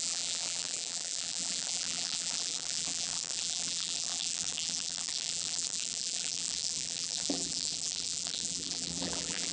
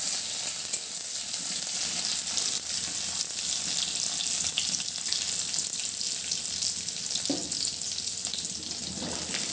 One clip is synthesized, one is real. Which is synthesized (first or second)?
first